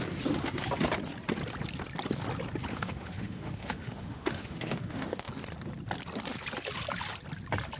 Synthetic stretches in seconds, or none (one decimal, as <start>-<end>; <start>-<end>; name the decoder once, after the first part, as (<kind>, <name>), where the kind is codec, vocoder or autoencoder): 2.7-5.3 (autoencoder, DAC-VAE)